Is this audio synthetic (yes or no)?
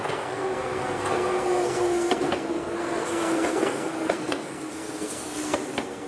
yes